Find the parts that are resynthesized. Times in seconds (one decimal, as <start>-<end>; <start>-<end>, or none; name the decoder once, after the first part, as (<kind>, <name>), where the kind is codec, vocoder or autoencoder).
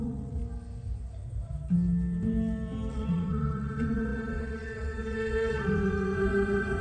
0.0-0.4 (vocoder, WaveNeXt); 2.9-6.8